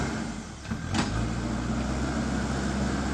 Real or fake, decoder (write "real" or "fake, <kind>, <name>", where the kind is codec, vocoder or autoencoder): real